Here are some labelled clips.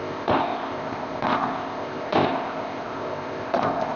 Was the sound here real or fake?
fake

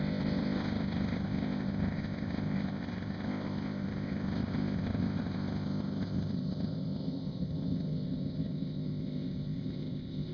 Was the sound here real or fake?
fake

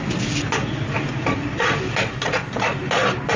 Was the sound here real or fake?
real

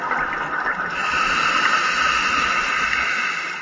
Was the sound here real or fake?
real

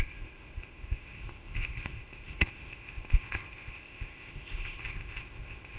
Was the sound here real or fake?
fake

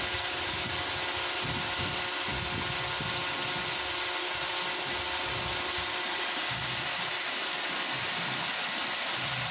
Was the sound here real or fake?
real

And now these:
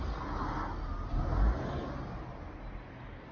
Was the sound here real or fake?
real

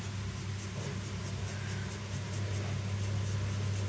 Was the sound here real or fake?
real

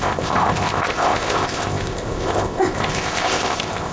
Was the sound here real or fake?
fake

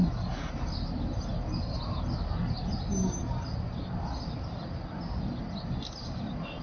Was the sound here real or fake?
real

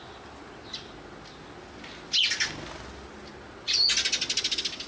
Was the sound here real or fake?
real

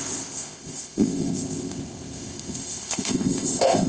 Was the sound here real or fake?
fake